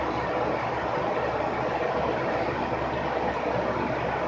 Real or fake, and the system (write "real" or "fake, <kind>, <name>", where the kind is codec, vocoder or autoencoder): fake, vocoder, BigVGAN v2